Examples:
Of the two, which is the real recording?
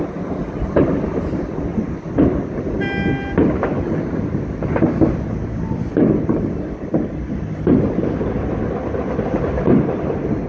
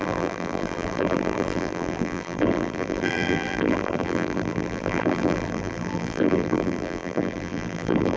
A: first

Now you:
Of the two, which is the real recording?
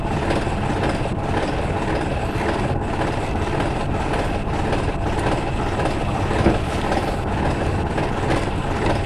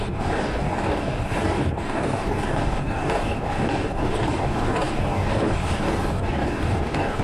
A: first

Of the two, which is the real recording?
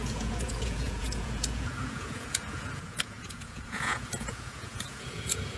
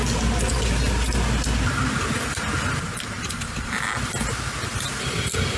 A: second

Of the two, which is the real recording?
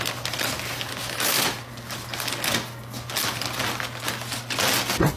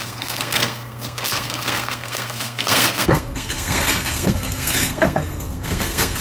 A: first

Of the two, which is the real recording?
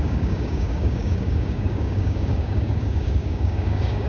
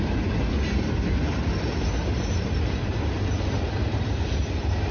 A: second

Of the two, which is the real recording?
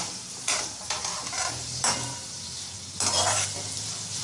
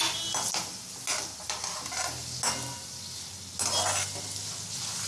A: second